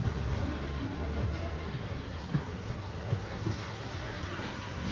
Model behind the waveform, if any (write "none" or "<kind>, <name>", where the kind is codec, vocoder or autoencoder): codec, SNAC